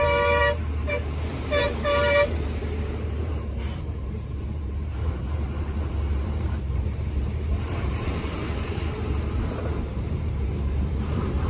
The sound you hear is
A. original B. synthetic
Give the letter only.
B